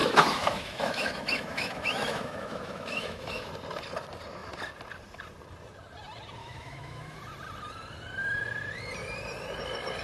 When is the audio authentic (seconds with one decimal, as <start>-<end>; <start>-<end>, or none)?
3.5-6.4; 7.2-10.0